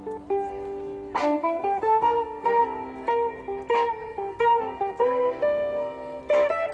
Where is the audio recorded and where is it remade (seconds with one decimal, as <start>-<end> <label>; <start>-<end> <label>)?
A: 0.0-1.2 recorded; 1.2-2.6 remade; 2.6-4.1 recorded; 4.1-6.2 remade; 6.2-6.7 recorded